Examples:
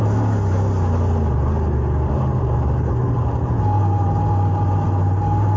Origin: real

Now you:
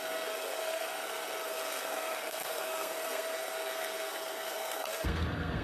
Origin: fake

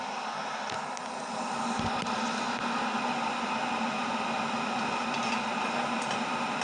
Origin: real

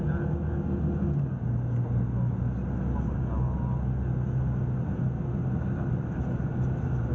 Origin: real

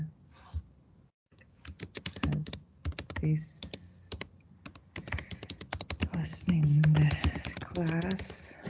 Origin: real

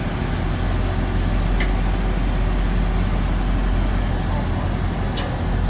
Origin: real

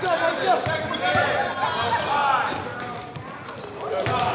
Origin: real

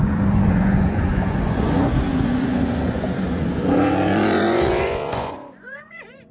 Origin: fake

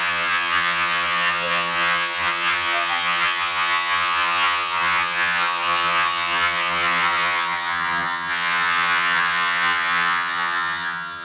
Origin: fake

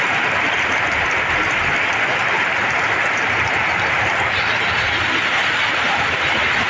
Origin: real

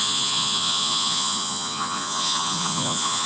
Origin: fake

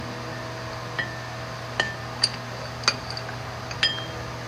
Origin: real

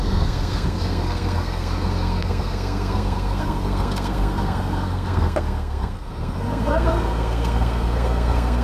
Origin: fake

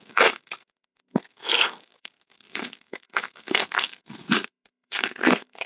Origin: fake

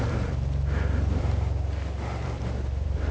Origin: fake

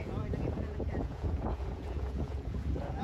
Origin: fake